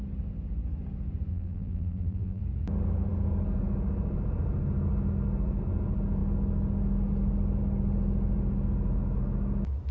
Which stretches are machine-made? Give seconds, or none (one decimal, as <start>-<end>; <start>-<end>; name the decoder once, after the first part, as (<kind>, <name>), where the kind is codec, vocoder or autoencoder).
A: 1.3-2.4 (vocoder, BigVGAN v2)